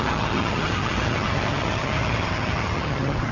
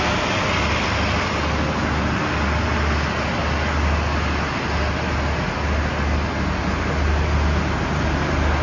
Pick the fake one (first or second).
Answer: first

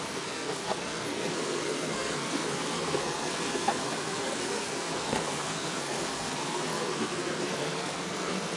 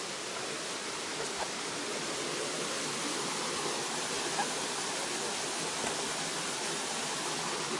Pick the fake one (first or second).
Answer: first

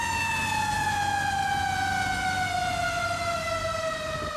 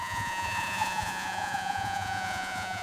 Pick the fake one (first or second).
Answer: second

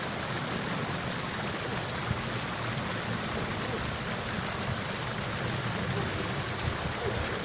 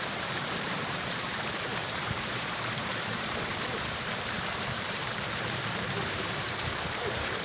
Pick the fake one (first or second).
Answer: second